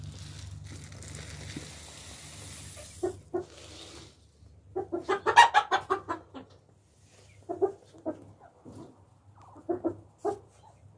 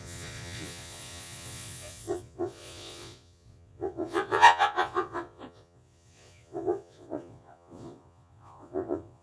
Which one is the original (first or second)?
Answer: first